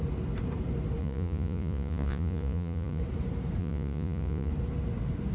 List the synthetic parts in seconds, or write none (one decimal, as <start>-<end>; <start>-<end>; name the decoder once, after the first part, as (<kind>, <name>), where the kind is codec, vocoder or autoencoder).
1.0-3.0 (vocoder, Vocos); 3.6-4.5